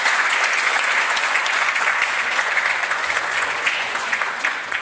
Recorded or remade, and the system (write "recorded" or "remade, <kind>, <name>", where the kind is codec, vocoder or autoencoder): remade, vocoder, Vocos